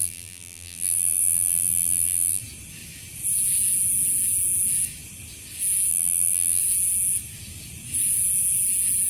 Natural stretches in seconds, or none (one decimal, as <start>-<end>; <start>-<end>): 2.4-5.9; 6.6-9.1